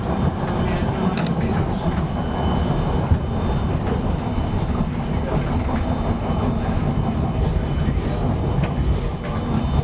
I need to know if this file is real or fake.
real